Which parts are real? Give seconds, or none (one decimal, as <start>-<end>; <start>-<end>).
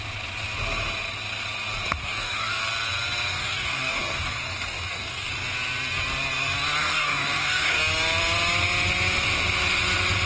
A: 0.0-2.0; 2.6-3.3; 5.3-6.8; 7.8-10.3